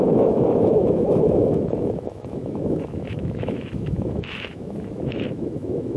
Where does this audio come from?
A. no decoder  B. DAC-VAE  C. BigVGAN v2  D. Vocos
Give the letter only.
B